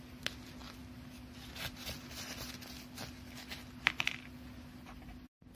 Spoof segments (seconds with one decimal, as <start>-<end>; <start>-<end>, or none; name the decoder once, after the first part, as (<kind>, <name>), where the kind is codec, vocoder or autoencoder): none